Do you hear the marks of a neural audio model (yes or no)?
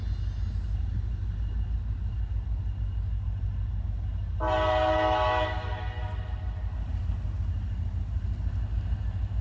no